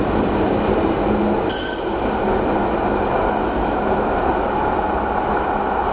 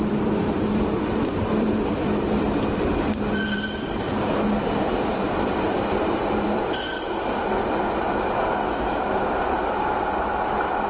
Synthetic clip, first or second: second